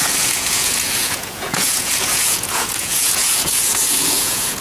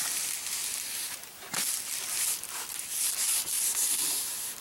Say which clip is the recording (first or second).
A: second